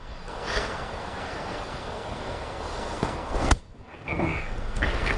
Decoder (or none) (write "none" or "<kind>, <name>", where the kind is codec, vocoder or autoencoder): codec, SNAC